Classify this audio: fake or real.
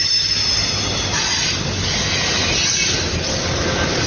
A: real